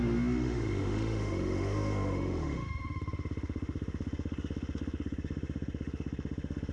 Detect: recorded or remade remade